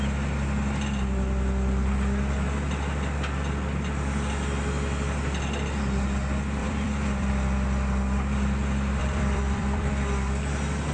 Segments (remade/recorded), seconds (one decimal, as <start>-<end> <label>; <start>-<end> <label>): 0.0-6.6 recorded; 6.6-7.3 remade; 7.3-9.0 recorded; 9.0-9.9 remade; 9.9-10.9 recorded